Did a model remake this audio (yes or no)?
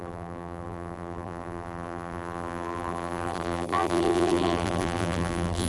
yes